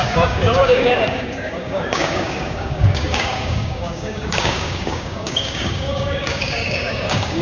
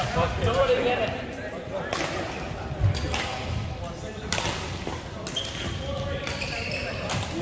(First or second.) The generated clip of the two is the first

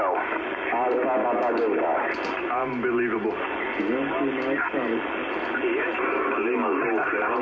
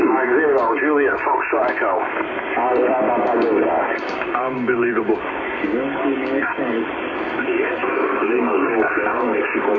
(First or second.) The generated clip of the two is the second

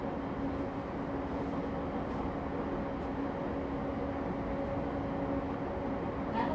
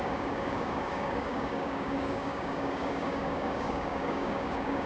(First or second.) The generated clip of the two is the second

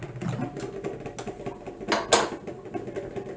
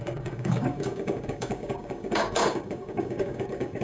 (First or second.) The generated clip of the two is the second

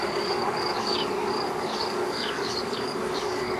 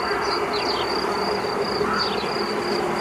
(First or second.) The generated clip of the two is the first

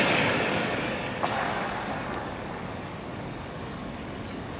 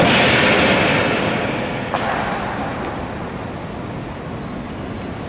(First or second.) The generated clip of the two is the first